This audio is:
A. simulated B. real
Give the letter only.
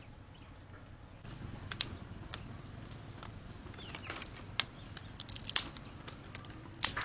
B